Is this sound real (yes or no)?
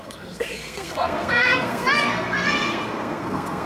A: no